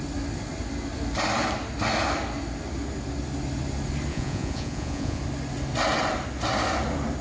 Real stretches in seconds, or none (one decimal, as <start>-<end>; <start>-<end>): 0.0-4.1; 5.2-7.2

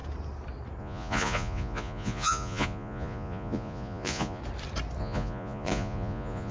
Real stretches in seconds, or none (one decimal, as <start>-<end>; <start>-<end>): 0.0-0.8; 4.4-5.0

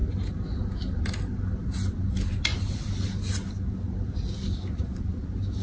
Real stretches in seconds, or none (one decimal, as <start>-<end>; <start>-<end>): 0.0-5.6

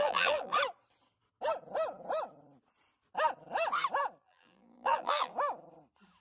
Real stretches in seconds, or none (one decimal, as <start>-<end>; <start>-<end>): 0.5-4.2; 5.3-6.2

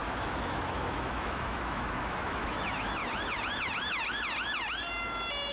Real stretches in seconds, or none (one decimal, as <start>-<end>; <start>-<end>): 3.0-5.5

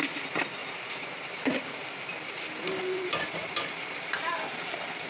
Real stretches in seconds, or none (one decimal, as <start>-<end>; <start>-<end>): none

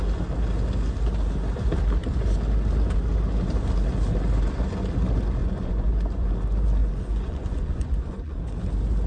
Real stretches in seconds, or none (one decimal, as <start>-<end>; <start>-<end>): 0.0-5.4; 6.3-6.8; 8.4-9.1